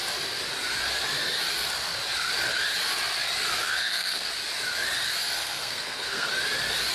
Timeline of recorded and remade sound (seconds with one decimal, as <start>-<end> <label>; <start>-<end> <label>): 0.0-3.6 recorded; 3.6-4.3 remade; 4.3-5.4 recorded; 5.4-6.3 remade; 6.3-6.9 recorded